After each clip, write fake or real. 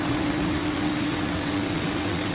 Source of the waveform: fake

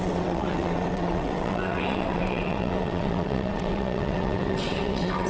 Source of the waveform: fake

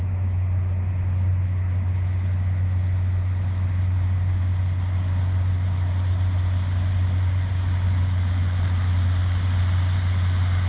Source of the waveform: real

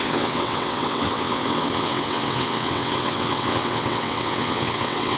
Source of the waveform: fake